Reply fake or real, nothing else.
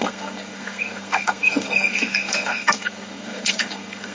fake